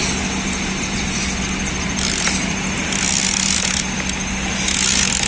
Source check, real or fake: real